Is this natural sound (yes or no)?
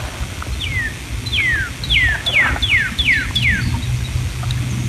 yes